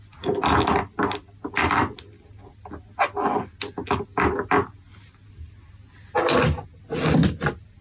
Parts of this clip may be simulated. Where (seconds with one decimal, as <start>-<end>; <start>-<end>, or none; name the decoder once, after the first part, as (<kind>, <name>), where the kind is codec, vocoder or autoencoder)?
none